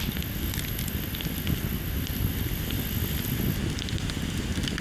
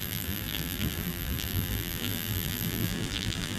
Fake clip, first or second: second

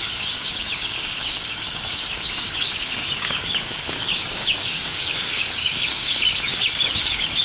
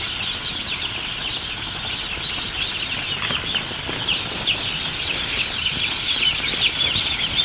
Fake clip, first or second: first